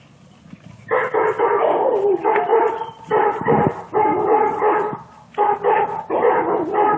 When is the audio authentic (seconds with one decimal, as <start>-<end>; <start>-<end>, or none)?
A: 0.0-2.5; 3.7-6.4

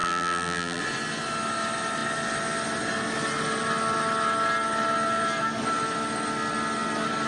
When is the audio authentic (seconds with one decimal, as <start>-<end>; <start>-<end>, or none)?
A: 0.8-7.3

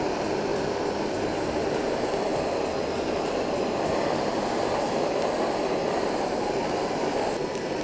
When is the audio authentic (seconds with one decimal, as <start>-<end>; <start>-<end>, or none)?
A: 0.0-0.5; 1.0-7.8